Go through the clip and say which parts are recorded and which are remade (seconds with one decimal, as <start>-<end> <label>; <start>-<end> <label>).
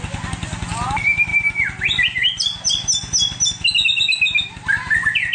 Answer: 0.0-5.3 recorded